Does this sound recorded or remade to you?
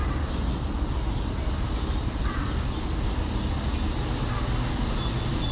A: recorded